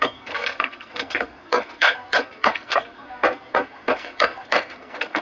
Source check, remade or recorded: remade